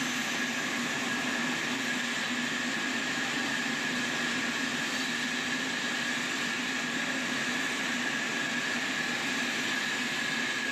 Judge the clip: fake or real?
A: real